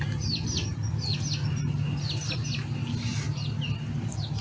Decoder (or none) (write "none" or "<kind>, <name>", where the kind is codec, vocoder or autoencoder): none